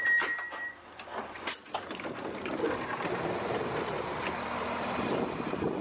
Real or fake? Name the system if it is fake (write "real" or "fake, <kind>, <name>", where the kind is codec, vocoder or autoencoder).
real